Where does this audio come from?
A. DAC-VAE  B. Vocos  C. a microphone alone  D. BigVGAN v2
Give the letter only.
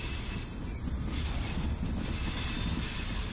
C